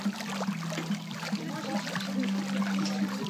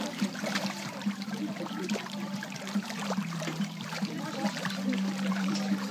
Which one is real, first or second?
first